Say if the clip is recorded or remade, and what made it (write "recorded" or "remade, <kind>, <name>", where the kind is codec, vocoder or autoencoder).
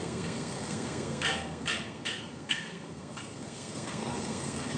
remade, codec, SNAC